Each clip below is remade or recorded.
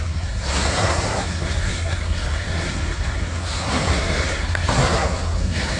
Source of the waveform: remade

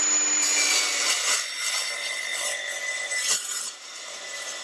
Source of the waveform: recorded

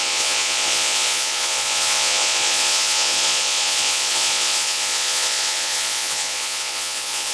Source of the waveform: remade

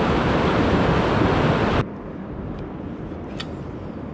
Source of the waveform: recorded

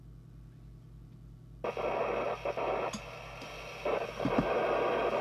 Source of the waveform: recorded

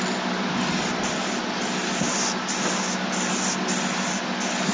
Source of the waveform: recorded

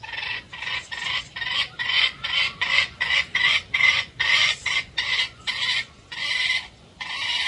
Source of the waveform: remade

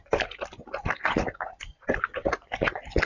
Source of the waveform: recorded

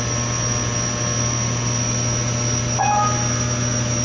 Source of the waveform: recorded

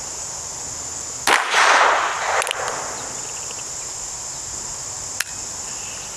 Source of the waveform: recorded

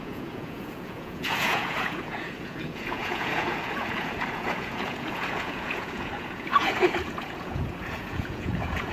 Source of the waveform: remade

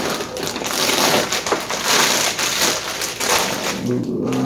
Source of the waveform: recorded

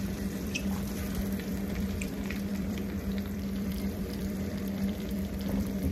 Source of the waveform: remade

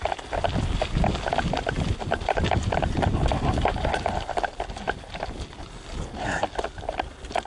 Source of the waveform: recorded